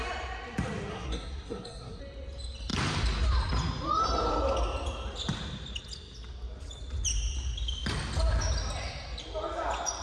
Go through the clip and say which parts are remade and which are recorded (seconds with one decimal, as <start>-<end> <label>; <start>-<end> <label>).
0.0-0.9 recorded; 0.9-2.0 remade; 2.0-10.0 recorded